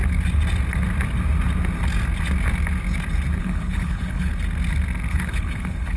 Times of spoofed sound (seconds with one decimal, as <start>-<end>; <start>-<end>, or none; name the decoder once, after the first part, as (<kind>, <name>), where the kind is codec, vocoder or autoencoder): 3.4-4.3 (codec, HILCodec); 5.1-6.0